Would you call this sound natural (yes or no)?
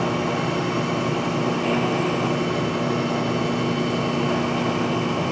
yes